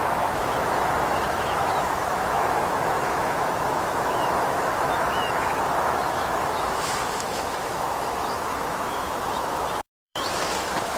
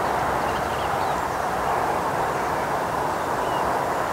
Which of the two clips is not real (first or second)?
first